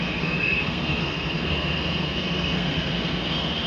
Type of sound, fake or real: fake